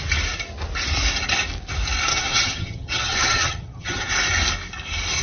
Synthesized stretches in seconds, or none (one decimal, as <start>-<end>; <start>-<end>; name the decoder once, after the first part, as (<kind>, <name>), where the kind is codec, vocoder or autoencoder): 2.1-4.1 (vocoder, HiFi-GAN)